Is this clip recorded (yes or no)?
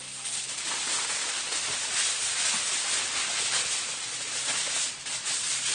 yes